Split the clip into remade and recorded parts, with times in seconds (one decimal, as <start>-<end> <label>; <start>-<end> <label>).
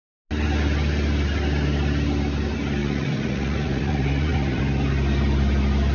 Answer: 0.0-2.8 recorded; 2.8-4.6 remade; 4.6-5.9 recorded